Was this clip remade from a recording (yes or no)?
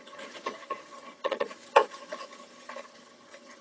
yes